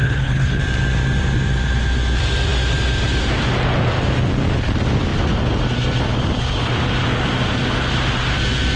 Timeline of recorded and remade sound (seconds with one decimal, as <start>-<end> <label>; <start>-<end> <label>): 0.0-0.6 remade; 0.6-8.8 recorded